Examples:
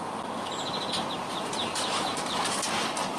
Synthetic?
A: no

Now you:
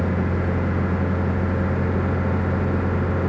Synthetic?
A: no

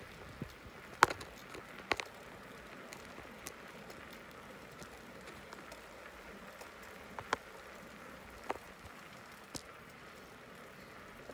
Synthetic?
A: no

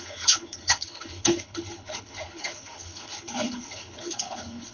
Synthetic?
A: yes